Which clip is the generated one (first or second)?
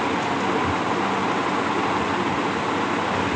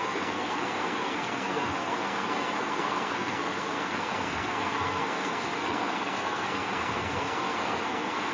second